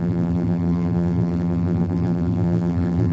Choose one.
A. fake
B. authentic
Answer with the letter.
A